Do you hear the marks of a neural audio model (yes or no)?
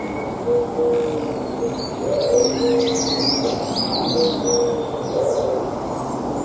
no